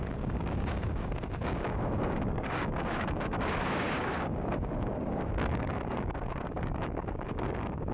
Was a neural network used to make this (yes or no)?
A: yes